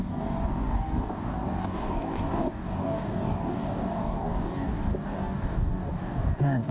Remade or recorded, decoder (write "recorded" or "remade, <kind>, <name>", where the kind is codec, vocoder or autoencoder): remade, codec, DAC